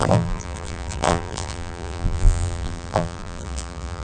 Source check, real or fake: fake